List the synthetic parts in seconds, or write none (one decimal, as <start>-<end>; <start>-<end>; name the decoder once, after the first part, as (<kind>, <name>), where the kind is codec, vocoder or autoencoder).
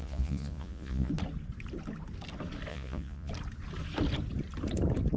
0.0-1.1 (vocoder, Vocos); 2.7-3.3